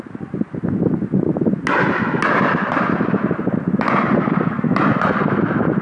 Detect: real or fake real